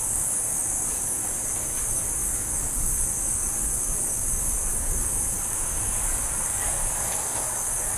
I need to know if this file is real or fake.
fake